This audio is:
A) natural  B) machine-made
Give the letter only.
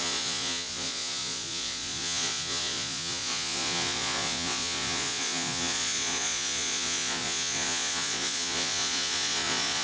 B